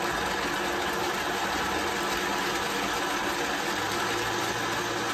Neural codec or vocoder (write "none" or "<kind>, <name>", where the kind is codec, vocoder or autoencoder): none